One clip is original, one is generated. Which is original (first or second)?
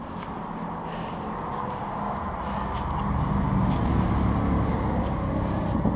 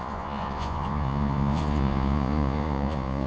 first